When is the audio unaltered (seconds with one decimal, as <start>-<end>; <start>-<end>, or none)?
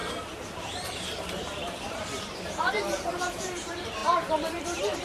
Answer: none